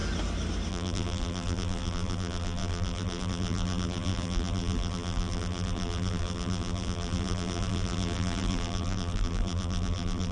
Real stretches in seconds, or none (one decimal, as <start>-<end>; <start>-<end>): 0.0-0.7